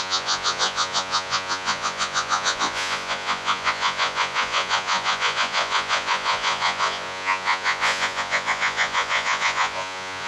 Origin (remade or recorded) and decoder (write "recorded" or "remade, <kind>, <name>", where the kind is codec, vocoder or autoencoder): remade, vocoder, Vocos